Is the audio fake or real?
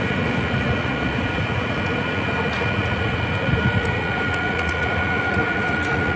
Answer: fake